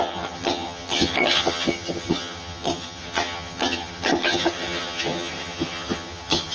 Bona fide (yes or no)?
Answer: no